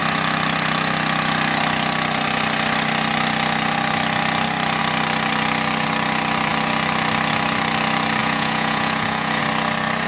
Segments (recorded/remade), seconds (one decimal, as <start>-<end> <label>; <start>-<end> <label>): 0.0-8.2 recorded; 8.2-9.4 remade; 9.4-10.1 recorded